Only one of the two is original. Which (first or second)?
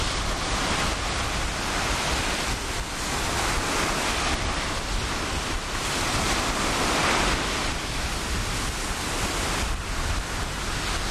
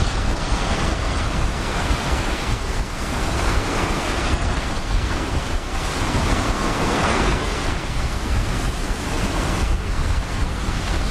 first